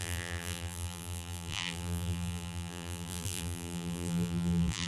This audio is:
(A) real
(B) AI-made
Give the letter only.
B